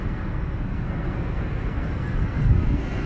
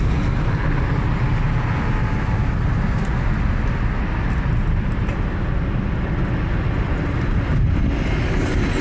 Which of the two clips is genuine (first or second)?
second